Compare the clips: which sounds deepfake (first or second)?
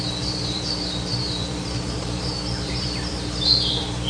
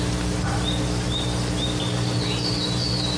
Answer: first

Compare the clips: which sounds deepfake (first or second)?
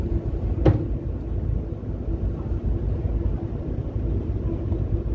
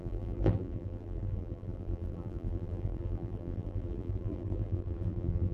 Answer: second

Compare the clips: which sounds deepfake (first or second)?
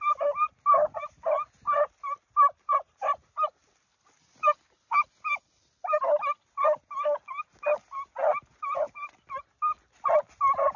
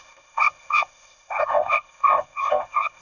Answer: second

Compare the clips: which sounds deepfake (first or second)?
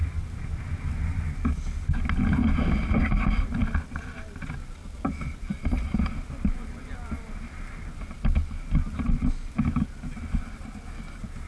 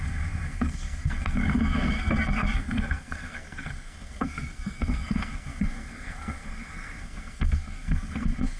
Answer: second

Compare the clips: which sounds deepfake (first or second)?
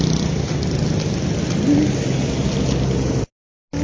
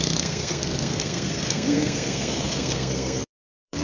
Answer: second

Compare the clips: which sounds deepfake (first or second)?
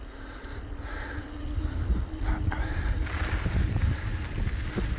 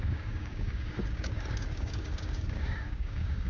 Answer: second